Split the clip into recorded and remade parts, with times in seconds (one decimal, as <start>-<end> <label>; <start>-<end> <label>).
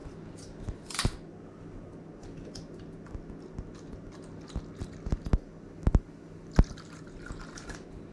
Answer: 0.0-8.1 recorded